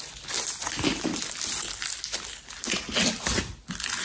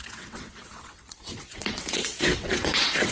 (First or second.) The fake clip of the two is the second